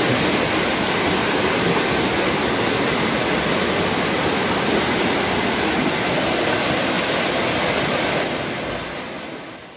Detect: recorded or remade recorded